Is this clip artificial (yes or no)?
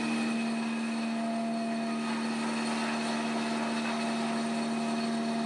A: no